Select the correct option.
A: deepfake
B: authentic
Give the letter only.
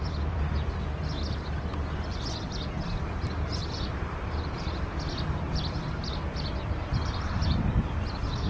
A